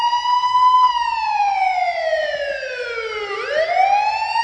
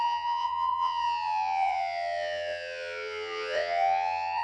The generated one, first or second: second